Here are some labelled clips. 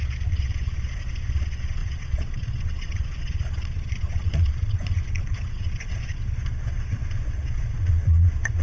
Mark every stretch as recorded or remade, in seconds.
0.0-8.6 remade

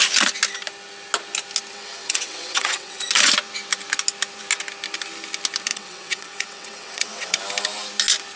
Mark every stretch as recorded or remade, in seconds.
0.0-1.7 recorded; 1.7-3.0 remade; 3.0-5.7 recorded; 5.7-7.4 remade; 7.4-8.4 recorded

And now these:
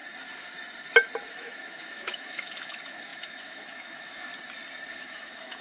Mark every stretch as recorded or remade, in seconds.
0.0-1.3 recorded; 1.3-4.3 remade; 4.3-4.9 recorded; 4.9-5.6 remade

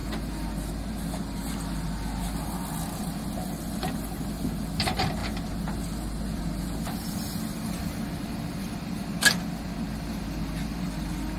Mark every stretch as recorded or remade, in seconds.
0.0-11.4 recorded

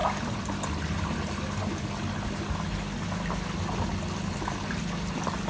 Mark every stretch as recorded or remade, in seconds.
0.0-5.5 recorded

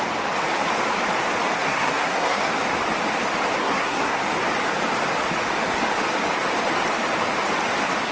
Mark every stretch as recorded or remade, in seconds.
0.0-1.6 recorded; 1.6-2.5 remade; 2.5-3.6 recorded; 3.6-4.2 remade; 4.2-8.1 recorded

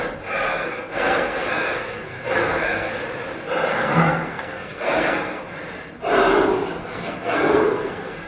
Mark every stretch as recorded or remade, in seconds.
0.0-0.5 recorded; 0.5-2.9 remade; 2.9-3.7 recorded; 3.7-5.4 remade; 5.4-6.8 recorded; 6.8-8.3 remade

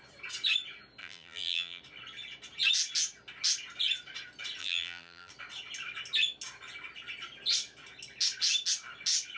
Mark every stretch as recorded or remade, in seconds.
0.0-1.0 recorded; 1.0-1.8 remade; 1.8-4.6 recorded; 4.6-5.3 remade; 5.3-9.4 recorded